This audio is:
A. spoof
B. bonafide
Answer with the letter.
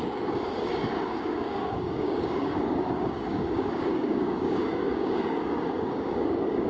A